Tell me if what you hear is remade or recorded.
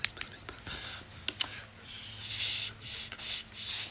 recorded